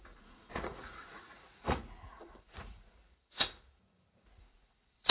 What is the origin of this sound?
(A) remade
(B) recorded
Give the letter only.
A